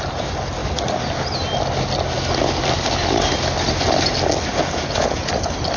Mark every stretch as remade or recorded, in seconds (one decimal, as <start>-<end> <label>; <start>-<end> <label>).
0.0-4.5 recorded; 4.5-5.3 remade; 5.3-5.8 recorded